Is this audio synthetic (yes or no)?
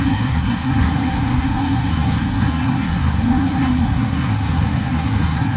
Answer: yes